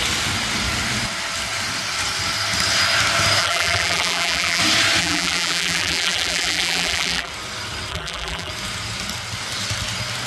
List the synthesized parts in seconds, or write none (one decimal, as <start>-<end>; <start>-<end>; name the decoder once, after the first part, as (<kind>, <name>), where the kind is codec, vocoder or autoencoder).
3.4-4.6 (vocoder, BigVGAN v2); 5.0-7.3; 7.9-8.5